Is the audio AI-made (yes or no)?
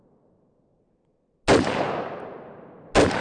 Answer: no